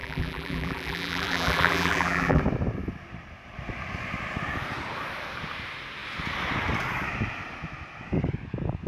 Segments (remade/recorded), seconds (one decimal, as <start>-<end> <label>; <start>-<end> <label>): 0.0-2.4 remade; 2.4-8.9 recorded